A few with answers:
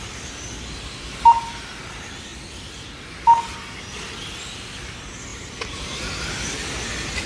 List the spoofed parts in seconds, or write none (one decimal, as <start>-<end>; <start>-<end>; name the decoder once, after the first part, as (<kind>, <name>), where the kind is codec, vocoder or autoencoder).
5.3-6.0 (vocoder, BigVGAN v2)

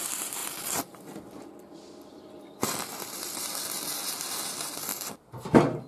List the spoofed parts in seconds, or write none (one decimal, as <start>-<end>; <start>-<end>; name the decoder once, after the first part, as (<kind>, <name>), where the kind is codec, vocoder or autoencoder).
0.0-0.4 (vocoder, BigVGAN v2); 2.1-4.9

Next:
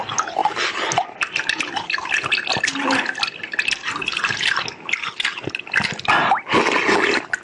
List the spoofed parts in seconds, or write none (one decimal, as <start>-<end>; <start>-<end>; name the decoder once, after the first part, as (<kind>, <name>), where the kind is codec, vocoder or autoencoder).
0.4-1.6 (vocoder, BigVGAN v2)

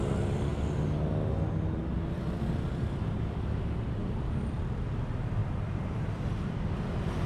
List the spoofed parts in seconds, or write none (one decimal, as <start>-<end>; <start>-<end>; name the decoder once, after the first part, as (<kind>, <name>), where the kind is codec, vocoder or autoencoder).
4.0-4.8 (vocoder, BigVGAN v2)